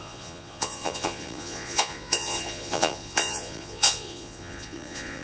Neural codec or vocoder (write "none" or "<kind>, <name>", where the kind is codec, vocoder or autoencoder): vocoder, Vocos